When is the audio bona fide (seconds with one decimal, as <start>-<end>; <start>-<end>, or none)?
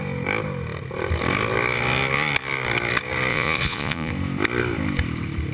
0.0-3.3; 4.1-5.5